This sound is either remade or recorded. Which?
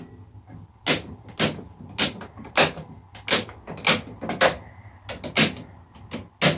recorded